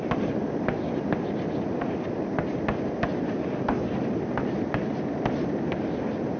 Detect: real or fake real